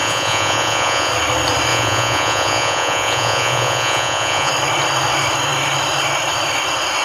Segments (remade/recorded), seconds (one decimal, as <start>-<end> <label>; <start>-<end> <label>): 0.0-1.1 remade; 1.1-1.7 recorded; 1.7-4.5 remade; 4.5-7.0 recorded